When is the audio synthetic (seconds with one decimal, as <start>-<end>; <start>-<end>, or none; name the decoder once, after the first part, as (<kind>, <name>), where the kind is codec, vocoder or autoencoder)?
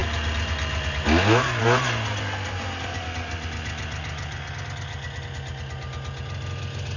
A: none